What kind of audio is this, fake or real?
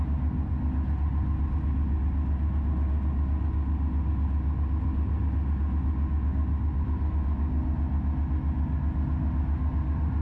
real